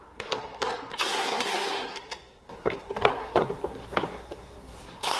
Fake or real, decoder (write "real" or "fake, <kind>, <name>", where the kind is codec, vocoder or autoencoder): fake, codec, SNAC